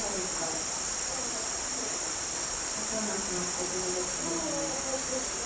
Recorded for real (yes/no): yes